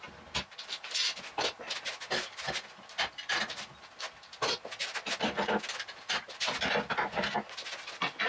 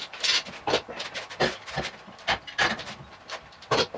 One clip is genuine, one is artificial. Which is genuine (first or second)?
first